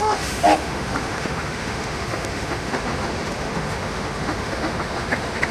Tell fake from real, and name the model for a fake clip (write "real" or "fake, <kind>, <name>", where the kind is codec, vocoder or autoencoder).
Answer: fake, autoencoder, DAC-VAE